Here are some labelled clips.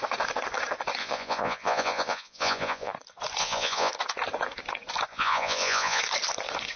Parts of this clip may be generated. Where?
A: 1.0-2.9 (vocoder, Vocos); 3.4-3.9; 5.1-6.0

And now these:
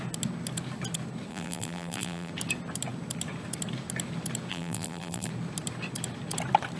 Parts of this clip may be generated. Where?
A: 1.3-2.3 (vocoder, BigVGAN v2); 4.5-5.3

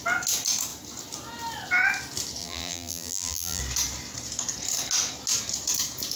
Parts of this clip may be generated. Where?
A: 2.4-3.6 (vocoder, BigVGAN v2)

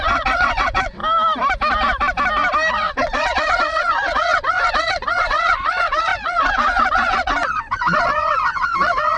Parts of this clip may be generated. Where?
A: 0.0-1.0 (vocoder, WaveNeXt); 2.7-9.2

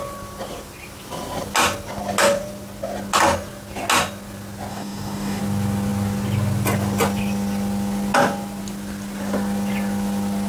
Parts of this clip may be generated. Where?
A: 4.7-5.4 (codec, DAC)